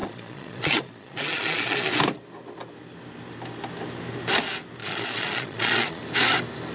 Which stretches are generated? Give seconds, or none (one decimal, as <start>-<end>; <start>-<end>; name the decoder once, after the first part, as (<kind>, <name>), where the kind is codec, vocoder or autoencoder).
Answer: 0.0-1.9 (vocoder, Vocos); 4.8-6.0